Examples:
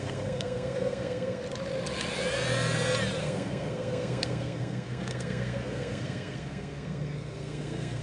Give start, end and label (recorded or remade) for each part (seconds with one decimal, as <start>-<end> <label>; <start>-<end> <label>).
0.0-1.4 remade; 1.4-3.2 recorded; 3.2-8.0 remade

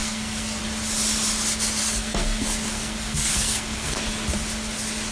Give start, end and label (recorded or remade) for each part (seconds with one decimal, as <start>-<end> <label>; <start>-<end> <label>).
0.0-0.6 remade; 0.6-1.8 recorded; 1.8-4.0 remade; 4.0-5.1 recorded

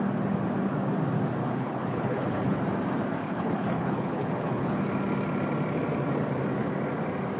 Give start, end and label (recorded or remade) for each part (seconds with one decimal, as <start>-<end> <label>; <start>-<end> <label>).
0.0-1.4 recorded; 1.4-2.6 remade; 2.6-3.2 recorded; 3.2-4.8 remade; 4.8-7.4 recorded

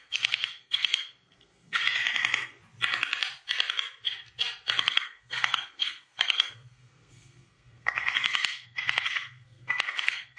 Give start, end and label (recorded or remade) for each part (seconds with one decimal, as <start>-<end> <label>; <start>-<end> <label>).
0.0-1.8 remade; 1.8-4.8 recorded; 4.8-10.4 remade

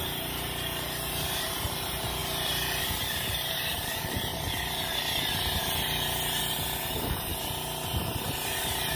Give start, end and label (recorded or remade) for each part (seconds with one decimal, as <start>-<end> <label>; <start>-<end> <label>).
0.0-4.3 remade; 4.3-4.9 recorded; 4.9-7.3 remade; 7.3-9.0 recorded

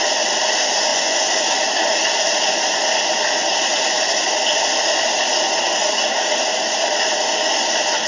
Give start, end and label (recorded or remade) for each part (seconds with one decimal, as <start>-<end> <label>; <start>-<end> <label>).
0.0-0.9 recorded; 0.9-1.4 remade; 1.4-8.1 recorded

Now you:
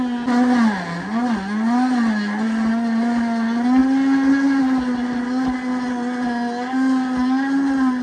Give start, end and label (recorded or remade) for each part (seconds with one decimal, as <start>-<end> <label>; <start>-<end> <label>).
0.0-8.0 recorded